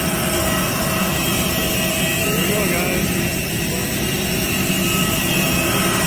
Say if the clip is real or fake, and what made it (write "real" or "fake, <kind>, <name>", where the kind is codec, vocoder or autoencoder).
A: real